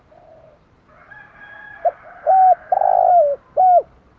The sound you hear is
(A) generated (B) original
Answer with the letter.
B